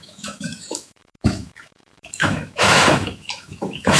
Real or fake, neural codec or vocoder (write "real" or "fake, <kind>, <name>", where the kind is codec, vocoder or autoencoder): fake, autoencoder, DAC-VAE